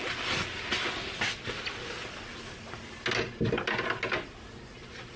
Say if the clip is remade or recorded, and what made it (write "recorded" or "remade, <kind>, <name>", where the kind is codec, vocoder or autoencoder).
recorded